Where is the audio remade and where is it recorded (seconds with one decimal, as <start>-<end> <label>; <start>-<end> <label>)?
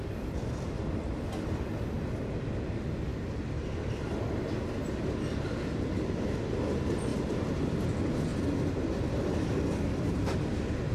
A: 0.0-7.1 recorded; 7.1-7.6 remade; 7.6-10.9 recorded